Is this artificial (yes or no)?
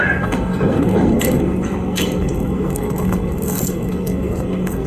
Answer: yes